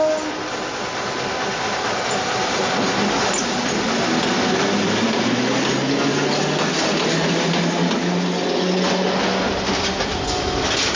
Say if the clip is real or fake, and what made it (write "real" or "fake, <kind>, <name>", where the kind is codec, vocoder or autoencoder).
real